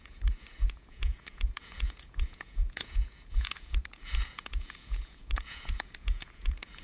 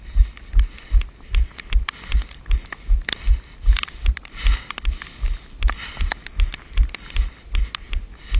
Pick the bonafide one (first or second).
second